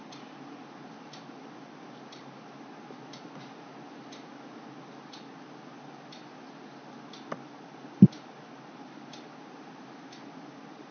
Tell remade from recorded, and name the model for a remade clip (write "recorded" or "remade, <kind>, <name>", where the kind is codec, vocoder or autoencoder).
recorded